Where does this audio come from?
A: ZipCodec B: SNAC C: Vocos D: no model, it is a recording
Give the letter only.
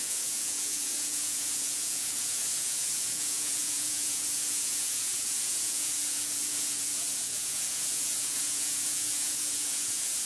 C